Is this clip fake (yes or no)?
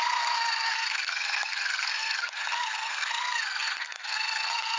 yes